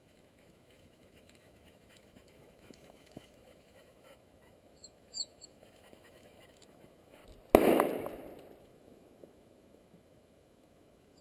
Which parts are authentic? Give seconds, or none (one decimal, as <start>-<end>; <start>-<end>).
7.2-8.6